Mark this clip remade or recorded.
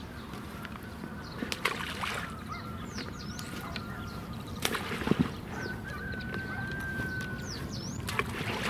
recorded